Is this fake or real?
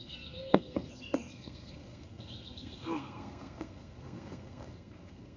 fake